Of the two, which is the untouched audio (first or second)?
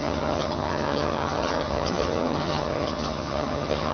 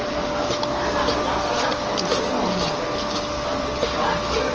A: second